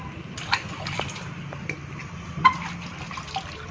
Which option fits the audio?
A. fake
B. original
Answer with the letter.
B